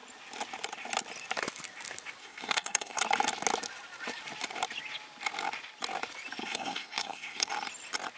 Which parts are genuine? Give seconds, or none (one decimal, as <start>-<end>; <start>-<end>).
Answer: 0.0-2.2; 3.0-6.4; 7.5-8.2

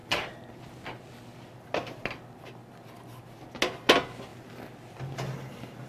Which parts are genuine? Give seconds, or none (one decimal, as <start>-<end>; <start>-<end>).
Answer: 0.0-5.9

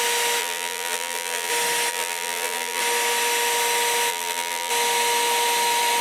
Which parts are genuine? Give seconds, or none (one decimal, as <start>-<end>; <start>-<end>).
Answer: 0.0-0.4; 1.5-1.9; 2.8-4.1; 4.7-6.0